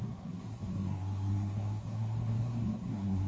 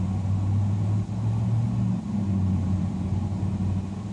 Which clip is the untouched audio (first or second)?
second